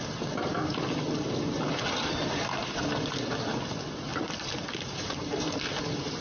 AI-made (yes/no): no